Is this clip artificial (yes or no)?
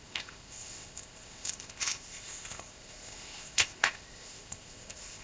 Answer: yes